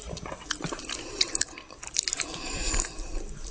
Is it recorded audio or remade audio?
recorded